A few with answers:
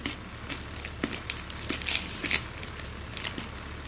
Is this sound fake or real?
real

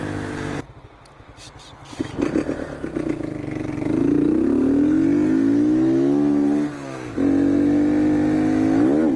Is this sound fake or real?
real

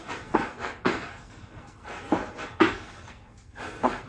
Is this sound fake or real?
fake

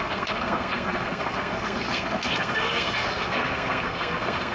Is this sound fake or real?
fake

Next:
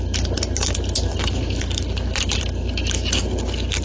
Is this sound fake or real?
real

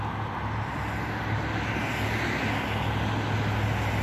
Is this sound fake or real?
real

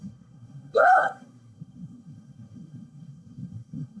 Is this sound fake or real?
fake